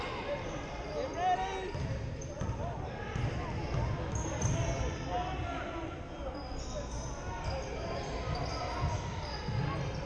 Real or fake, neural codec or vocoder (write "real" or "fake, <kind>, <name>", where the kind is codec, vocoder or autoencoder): real